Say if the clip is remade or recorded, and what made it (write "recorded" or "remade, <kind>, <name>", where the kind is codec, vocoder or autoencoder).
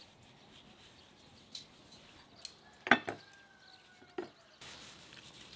recorded